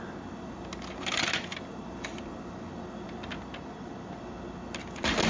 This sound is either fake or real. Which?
real